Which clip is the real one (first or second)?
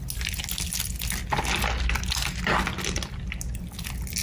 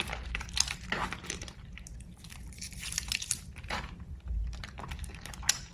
first